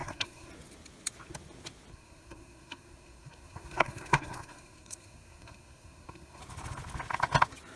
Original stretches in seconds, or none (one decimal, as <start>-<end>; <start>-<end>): 0.5-1.9; 6.4-7.8